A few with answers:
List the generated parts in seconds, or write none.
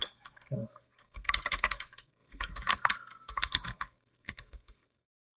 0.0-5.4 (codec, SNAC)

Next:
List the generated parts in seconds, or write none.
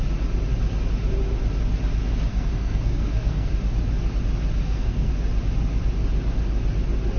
2.3-3.5 (codec, SNAC); 4.6-5.1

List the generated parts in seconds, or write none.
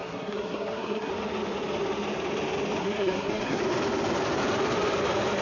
0.0-1.1 (codec, SNAC); 2.8-3.6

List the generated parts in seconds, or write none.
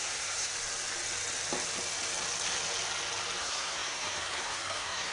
0.0-0.5 (codec, SNAC); 3.4-5.1